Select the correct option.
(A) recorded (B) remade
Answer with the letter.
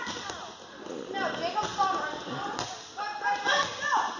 A